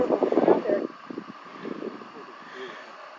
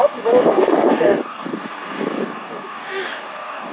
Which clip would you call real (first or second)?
first